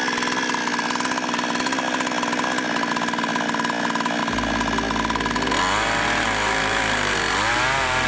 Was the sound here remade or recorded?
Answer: recorded